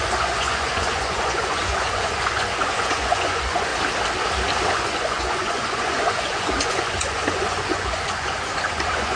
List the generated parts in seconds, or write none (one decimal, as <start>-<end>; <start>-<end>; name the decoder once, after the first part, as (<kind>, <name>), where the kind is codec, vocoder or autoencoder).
0.0-3.7 (vocoder, Vocos); 4.7-9.2